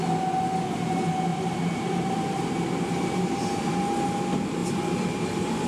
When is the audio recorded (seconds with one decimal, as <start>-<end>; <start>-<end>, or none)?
0.0-1.3; 2.4-2.9; 3.8-4.6